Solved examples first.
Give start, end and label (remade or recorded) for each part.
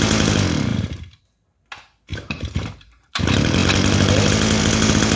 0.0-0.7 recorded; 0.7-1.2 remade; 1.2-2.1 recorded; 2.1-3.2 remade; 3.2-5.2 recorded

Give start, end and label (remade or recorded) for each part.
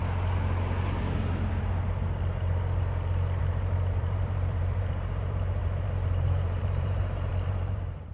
0.0-3.4 recorded; 3.4-8.1 remade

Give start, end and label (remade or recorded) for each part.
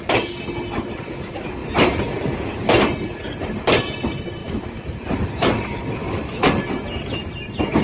0.0-4.4 recorded; 4.4-5.8 remade; 5.8-7.8 recorded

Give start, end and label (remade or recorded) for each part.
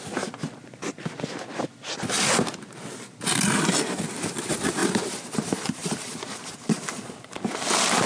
0.0-4.8 recorded; 4.8-7.4 remade; 7.4-8.1 recorded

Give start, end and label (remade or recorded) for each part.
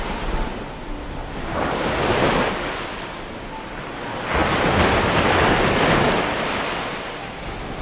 0.0-7.8 recorded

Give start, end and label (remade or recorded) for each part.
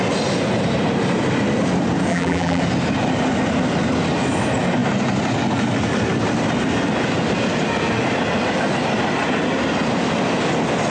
0.0-2.1 recorded; 2.1-2.6 remade; 2.6-10.9 recorded